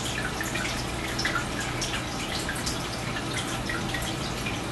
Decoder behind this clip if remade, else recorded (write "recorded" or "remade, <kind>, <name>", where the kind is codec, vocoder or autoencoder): recorded